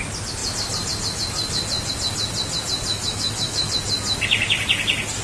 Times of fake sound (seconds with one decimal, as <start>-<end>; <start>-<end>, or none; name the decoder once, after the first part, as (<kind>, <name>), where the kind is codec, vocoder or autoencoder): 2.9-3.7 (autoencoder, DAC-VAE)